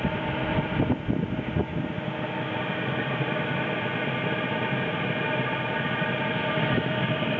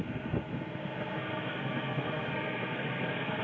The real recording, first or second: first